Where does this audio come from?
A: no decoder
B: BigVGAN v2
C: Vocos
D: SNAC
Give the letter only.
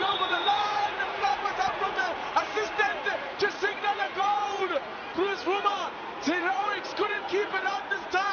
C